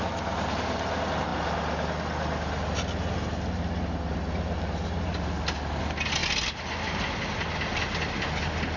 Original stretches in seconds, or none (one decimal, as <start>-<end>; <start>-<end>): 0.0-8.8